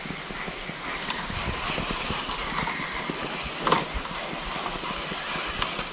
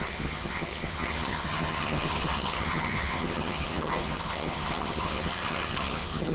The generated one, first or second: second